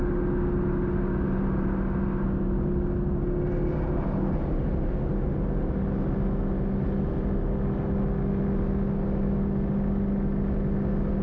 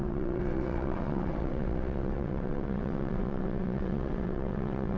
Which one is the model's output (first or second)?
second